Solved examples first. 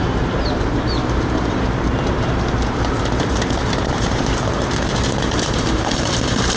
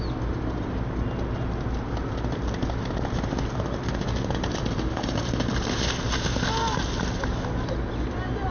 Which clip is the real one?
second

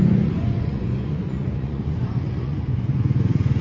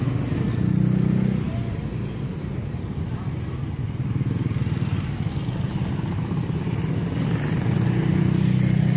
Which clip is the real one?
second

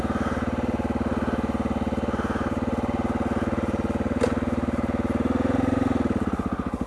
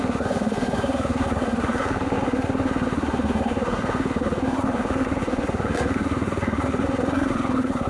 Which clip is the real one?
first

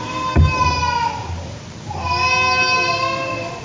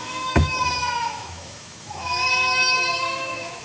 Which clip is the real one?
first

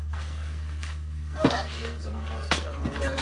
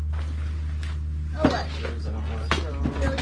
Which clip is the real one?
second